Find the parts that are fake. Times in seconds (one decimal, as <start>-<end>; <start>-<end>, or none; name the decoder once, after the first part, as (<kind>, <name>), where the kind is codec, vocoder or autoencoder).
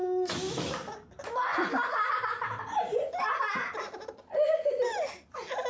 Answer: none